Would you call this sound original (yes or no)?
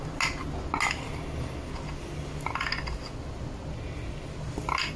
yes